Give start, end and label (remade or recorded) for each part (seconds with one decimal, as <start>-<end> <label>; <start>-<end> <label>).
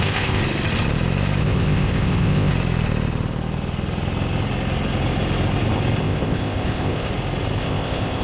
0.0-0.4 remade; 0.4-1.4 recorded; 1.4-2.5 remade; 2.5-6.0 recorded; 6.0-7.1 remade; 7.1-7.6 recorded; 7.6-8.2 remade